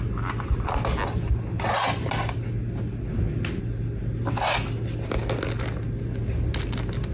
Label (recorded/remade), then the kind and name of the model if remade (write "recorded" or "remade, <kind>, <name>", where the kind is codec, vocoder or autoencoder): recorded